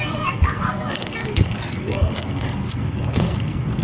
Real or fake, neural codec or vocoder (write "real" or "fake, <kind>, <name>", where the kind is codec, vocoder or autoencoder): fake, codec, SNAC